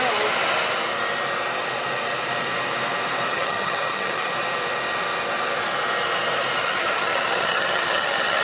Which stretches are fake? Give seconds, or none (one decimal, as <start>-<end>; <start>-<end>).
3.3-4.3; 6.6-8.4